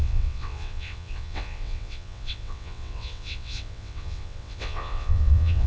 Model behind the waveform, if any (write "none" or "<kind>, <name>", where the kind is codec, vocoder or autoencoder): vocoder, WaveNeXt